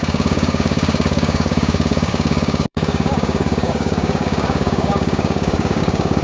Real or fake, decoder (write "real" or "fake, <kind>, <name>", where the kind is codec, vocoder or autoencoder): fake, codec, DAC